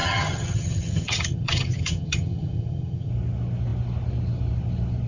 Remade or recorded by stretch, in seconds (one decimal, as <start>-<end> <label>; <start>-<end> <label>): 0.0-3.1 remade; 3.1-5.1 recorded